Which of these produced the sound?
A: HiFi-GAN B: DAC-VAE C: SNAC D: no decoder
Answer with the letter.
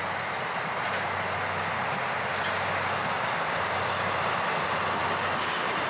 D